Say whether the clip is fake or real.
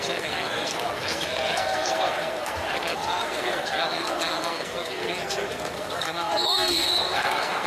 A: fake